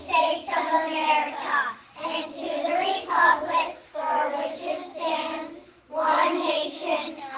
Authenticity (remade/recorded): remade